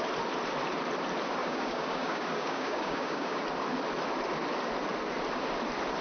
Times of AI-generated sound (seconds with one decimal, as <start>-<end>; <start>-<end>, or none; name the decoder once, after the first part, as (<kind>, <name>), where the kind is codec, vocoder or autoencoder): 1.4-3.4 (codec, DAC)